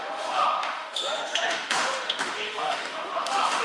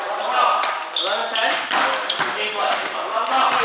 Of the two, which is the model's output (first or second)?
first